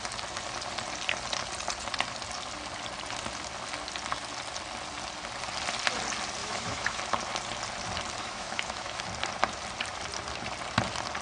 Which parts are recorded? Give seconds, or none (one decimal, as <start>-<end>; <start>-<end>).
0.0-6.4; 7.0-8.2; 9.0-11.2